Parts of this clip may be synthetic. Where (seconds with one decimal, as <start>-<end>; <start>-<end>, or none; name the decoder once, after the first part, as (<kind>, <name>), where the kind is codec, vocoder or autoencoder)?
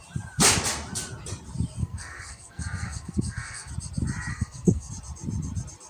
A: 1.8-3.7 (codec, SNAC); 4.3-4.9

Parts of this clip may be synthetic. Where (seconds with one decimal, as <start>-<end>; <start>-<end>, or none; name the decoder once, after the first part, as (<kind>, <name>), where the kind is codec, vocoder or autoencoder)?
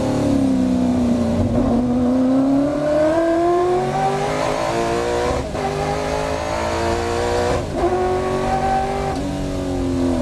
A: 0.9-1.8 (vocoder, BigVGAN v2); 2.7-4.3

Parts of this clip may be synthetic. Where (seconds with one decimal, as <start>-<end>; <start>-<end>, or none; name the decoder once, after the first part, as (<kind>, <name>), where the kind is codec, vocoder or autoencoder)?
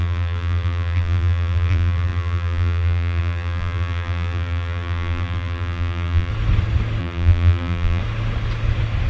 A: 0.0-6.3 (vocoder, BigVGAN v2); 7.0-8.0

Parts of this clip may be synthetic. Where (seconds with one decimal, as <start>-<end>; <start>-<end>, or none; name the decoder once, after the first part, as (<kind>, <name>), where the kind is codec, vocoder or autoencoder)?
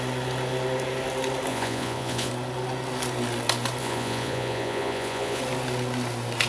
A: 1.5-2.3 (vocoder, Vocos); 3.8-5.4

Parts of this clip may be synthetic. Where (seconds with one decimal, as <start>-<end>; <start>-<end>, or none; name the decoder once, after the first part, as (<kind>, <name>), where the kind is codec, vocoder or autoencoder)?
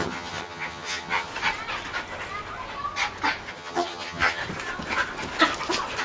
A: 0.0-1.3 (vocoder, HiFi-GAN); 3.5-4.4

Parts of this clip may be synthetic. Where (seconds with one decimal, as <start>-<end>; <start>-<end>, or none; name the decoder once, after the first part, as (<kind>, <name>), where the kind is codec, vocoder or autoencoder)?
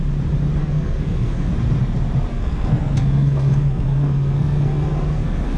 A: 0.6-1.5 (codec, SNAC); 2.3-5.6